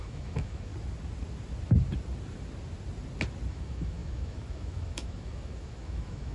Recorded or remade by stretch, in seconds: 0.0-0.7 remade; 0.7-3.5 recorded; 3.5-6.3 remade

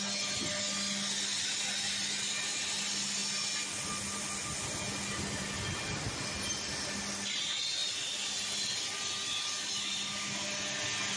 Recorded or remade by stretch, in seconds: 0.0-11.2 recorded

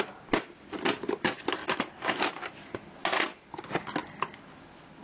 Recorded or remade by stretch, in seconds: 0.0-5.0 recorded